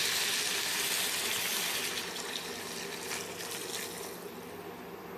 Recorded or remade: recorded